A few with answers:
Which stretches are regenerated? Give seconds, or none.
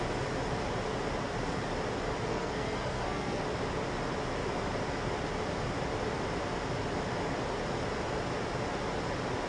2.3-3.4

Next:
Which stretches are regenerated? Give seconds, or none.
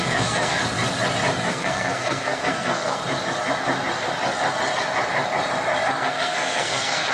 0.0-0.6; 1.5-3.0; 5.9-7.1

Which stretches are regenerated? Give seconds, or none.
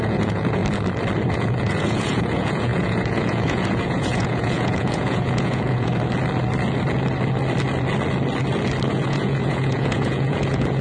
0.0-0.6; 1.3-5.9; 8.9-10.8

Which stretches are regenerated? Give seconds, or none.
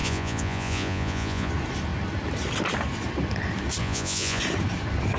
0.0-1.5; 3.8-4.4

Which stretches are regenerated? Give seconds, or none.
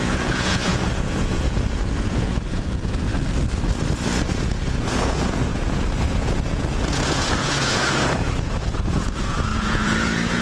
0.0-3.1; 4.3-10.4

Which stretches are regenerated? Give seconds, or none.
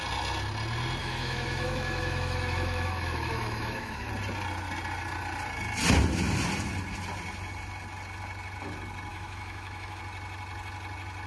1.0-4.1; 9.1-10.0